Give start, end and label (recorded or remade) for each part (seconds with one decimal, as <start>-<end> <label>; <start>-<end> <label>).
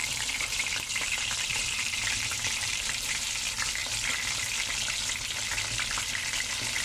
0.0-3.3 remade; 3.3-6.8 recorded